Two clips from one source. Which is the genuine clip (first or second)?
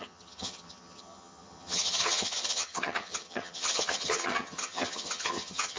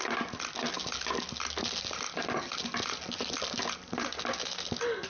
second